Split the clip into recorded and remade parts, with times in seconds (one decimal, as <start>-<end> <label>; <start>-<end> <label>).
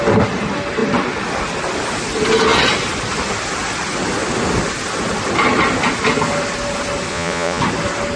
0.0-7.1 recorded; 7.1-7.6 remade; 7.6-8.2 recorded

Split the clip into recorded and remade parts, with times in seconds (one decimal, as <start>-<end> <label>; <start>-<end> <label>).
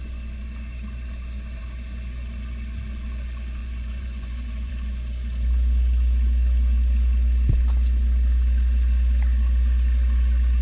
0.0-3.6 recorded; 3.6-4.7 remade; 4.7-10.6 recorded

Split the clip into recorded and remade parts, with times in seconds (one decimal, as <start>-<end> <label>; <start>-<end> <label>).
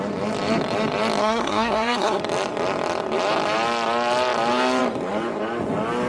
0.0-1.2 recorded; 1.2-2.2 remade; 2.2-6.1 recorded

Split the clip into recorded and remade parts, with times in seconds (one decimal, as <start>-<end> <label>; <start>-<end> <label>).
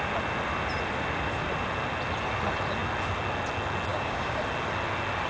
0.0-3.9 recorded; 3.9-4.4 remade; 4.4-5.3 recorded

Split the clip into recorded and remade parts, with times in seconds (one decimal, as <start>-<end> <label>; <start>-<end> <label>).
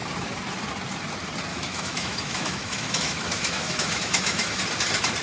0.0-1.5 recorded; 1.5-4.6 remade; 4.6-5.2 recorded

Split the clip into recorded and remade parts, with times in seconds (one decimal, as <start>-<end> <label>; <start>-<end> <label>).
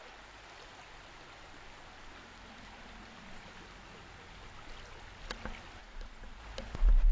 0.0-5.8 recorded; 5.8-6.4 remade; 6.4-7.1 recorded